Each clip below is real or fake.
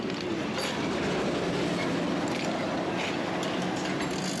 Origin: real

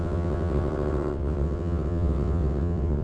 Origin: fake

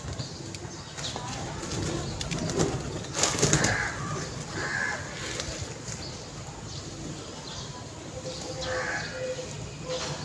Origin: real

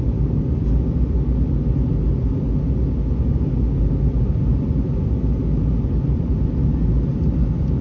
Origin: real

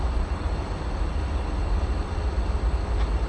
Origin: real